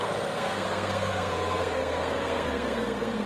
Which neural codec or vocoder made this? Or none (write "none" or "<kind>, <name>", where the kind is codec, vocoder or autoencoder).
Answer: codec, SNAC